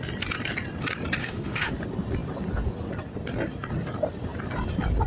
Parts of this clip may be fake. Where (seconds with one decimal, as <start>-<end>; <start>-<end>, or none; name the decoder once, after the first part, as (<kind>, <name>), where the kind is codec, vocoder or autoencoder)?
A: 1.2-1.7 (autoencoder, DAC-VAE)